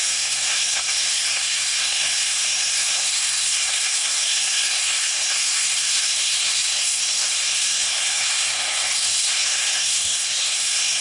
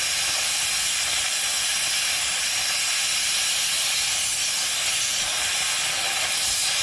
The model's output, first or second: first